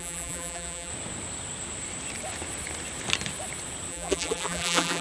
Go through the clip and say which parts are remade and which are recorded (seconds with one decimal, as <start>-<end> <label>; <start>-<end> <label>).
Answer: 0.0-0.9 remade; 0.9-3.9 recorded; 3.9-5.0 remade